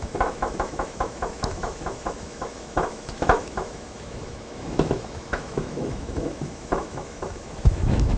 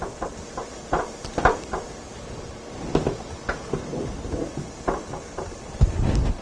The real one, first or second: second